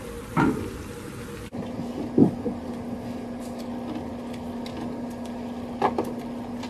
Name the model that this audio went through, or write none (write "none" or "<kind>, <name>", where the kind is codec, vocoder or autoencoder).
none